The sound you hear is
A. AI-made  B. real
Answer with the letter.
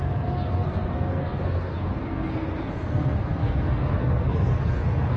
A